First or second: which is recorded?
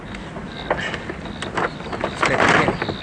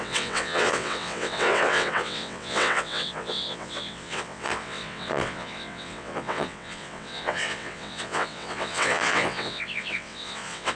first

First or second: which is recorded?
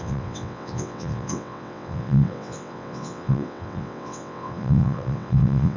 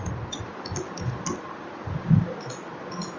second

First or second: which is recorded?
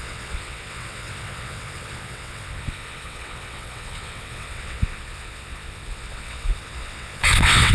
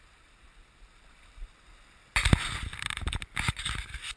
second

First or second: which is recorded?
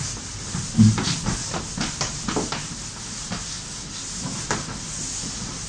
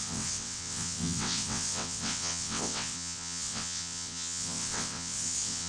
first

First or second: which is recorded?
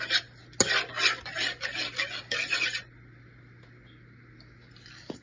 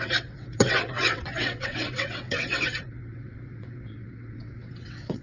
first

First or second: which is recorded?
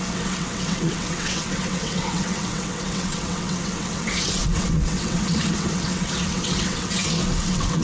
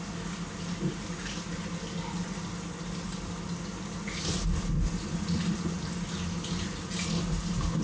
second